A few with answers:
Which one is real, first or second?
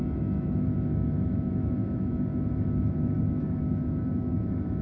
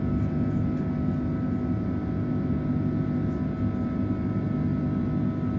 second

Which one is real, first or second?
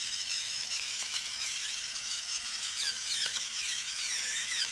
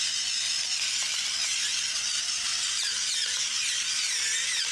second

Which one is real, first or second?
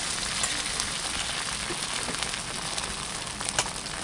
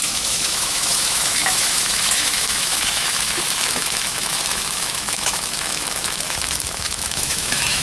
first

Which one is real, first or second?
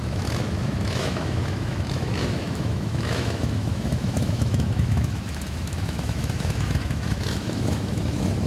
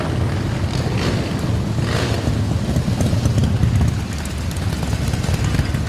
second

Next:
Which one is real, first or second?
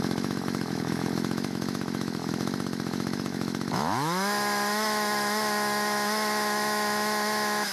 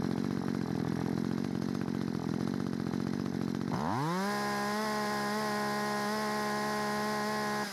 second